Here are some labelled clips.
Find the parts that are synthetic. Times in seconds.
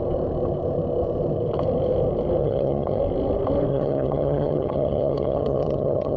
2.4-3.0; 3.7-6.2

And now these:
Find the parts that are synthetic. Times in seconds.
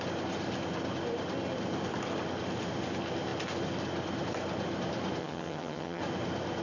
5.2-6.0